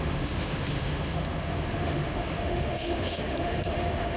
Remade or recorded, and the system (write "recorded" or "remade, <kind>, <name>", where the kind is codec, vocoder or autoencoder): remade, autoencoder, DAC-VAE